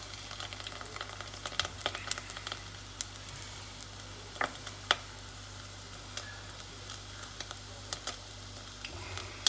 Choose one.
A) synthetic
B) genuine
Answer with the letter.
B